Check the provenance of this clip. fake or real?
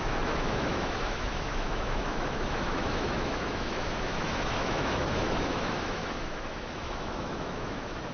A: fake